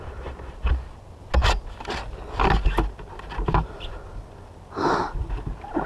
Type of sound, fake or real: real